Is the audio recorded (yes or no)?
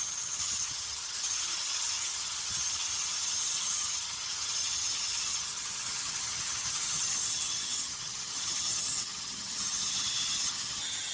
no